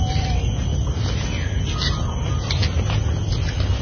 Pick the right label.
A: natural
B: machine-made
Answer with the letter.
A